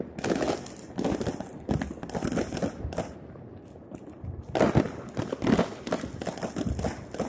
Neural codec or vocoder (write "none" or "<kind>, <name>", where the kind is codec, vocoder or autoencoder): none